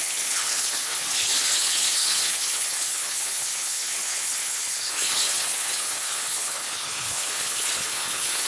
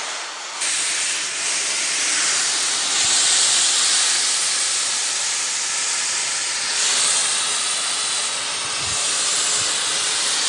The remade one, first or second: first